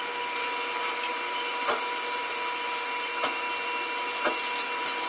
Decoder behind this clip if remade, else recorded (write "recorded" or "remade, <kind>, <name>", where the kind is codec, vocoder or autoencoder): recorded